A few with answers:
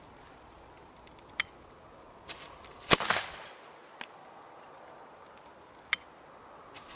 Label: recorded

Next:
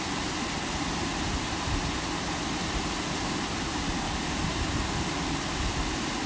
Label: recorded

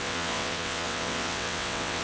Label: remade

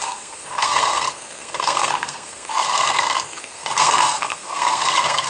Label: remade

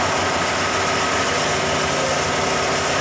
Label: recorded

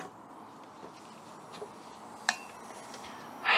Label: recorded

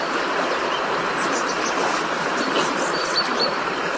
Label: remade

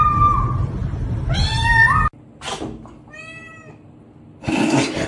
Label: recorded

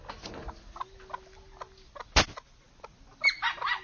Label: recorded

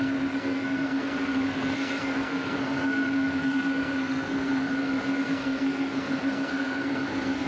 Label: remade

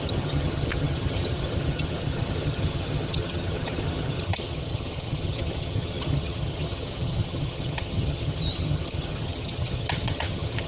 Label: remade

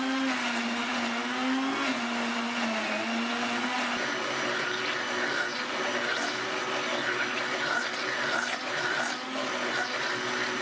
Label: recorded